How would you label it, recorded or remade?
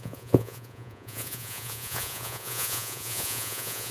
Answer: remade